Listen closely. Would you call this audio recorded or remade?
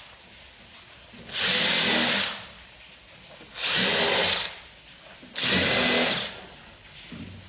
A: recorded